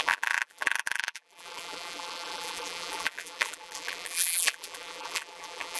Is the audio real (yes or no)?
no